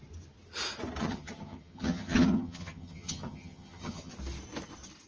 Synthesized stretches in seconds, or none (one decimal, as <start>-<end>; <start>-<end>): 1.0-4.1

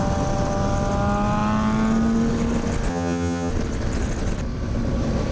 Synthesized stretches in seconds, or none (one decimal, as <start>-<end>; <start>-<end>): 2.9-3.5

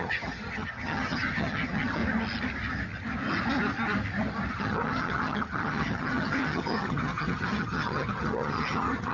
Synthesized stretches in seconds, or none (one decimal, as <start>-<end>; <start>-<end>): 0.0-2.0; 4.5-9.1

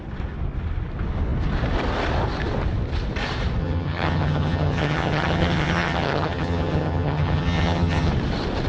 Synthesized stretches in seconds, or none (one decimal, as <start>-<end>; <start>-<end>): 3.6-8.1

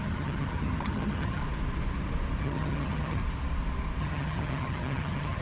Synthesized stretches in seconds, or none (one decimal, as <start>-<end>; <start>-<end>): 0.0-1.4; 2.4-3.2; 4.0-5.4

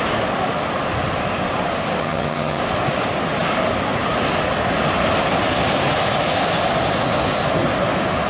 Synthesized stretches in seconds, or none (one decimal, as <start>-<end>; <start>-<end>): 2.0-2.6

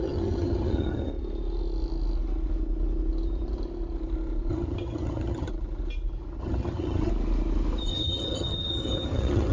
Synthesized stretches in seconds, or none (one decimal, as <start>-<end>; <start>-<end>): 0.0-1.1; 4.5-5.5; 6.4-7.1; 7.9-9.5